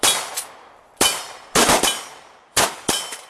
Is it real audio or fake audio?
fake